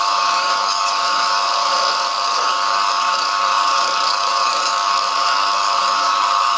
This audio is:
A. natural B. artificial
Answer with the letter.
B